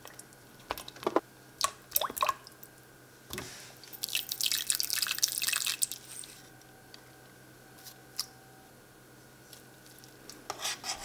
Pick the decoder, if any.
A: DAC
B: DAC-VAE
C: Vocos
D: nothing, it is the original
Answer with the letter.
D